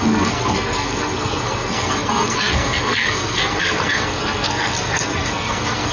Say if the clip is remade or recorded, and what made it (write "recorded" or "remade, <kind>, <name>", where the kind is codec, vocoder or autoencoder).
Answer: remade, codec, SNAC